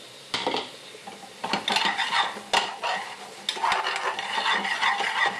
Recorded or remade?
recorded